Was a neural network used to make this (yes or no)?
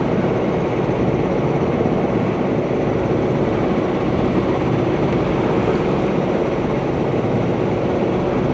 no